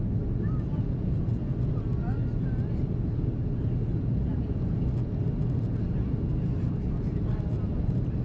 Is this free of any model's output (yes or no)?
yes